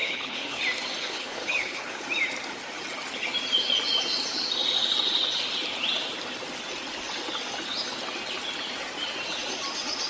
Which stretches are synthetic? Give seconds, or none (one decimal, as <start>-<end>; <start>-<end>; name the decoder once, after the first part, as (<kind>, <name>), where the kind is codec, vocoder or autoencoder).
0.0-0.6 (codec, HILCodec); 1.0-1.9

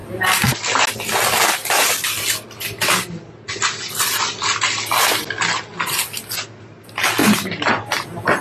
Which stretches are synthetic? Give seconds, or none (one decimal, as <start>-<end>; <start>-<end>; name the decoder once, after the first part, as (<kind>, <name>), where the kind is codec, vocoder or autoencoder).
7.2-7.7 (vocoder, BigVGAN v2)

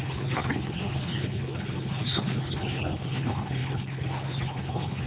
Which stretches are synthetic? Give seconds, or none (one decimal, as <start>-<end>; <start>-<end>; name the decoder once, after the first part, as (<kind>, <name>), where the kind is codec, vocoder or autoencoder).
0.0-5.1 (codec, HILCodec)